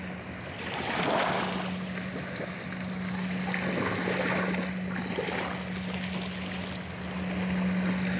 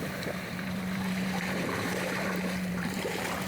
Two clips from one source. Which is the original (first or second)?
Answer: first